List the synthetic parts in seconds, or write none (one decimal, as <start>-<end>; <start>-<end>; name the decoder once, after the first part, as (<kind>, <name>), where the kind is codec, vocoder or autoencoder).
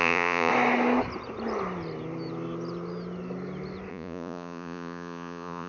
0.0-0.5 (vocoder, Vocos); 3.9-5.7